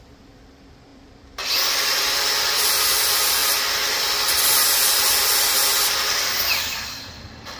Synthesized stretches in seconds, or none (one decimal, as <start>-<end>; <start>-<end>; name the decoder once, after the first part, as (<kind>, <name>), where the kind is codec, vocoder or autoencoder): 0.0-3.4 (vocoder, BigVGAN v2); 4.0-5.5; 7.1-7.6